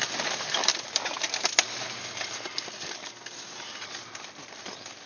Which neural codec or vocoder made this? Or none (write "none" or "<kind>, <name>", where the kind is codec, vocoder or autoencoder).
none